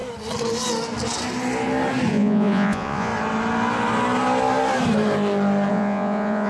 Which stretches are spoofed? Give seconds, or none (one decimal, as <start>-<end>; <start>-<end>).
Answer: 2.1-3.1; 5.7-6.5